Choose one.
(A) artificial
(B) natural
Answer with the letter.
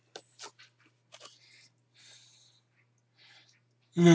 B